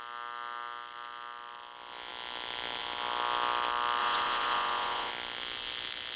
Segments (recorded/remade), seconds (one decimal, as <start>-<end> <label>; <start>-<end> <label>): 0.0-4.0 recorded; 4.0-5.1 remade; 5.1-6.2 recorded

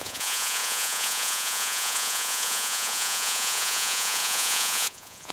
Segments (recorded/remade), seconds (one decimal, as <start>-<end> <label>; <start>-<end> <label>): 0.0-5.3 remade